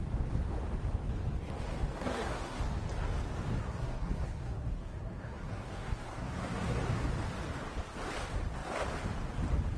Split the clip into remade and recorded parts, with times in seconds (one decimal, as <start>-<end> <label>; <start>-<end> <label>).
0.0-2.0 recorded; 2.0-2.6 remade; 2.6-3.6 recorded; 3.6-7.1 remade; 7.1-9.8 recorded